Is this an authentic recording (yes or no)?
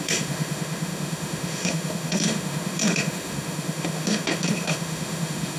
no